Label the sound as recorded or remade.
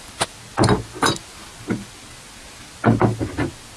recorded